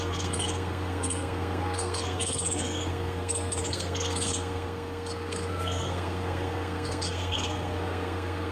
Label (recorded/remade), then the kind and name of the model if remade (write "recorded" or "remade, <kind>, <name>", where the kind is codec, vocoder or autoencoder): remade, codec, SNAC